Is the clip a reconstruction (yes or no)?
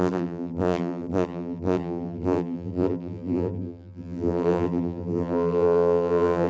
yes